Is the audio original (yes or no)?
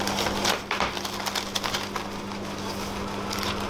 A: yes